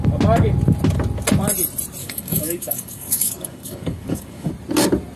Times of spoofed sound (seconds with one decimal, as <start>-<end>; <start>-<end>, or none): 2.0-4.5